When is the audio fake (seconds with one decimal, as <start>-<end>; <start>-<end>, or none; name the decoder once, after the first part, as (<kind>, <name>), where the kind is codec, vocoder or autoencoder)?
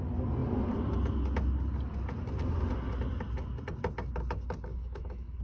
4.7-5.4 (autoencoder, DAC-VAE)